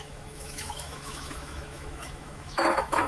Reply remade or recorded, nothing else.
remade